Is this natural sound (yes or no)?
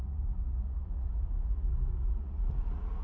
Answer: no